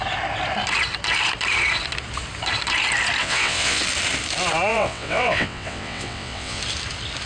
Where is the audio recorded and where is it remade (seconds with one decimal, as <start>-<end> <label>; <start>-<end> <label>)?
0.0-3.2 recorded; 3.2-3.8 remade; 3.8-4.7 recorded; 4.7-6.6 remade; 6.6-7.3 recorded